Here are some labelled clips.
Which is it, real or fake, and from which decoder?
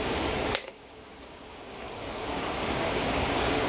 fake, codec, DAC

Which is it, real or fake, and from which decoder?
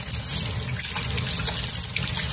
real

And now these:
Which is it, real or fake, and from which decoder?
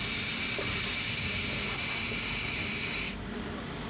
real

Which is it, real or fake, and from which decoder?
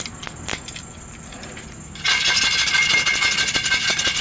real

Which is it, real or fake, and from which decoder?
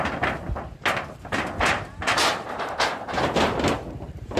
real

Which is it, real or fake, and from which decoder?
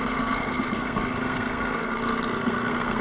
fake, codec, SNAC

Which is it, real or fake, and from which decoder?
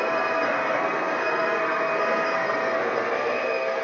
fake, codec, SNAC